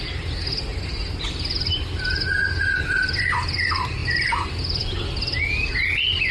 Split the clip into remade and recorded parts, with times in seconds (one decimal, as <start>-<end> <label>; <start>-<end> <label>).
0.0-6.3 recorded